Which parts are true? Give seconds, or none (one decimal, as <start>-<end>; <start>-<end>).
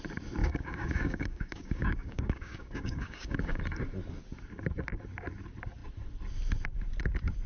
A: 0.0-0.4; 3.6-7.5